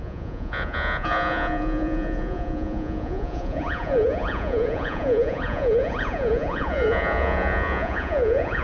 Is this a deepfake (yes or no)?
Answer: yes